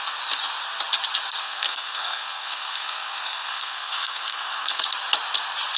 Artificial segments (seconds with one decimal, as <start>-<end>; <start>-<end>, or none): 1.4-4.8